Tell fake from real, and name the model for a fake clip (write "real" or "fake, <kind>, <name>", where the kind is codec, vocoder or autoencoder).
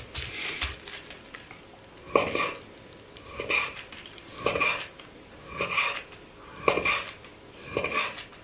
real